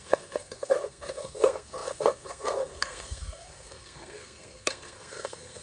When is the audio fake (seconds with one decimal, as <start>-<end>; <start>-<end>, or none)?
0.0-5.6